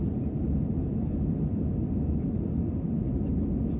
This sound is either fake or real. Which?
real